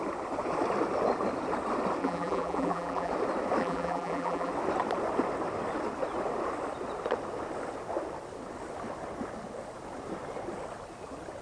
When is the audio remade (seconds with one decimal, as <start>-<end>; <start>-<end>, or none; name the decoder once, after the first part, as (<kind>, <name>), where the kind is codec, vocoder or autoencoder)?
2.0-3.1 (vocoder, BigVGAN v2); 3.6-4.5